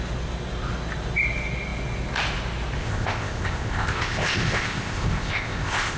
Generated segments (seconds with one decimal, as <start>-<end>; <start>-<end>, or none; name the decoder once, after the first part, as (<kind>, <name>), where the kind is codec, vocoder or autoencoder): 2.8-6.0 (codec, ZipCodec)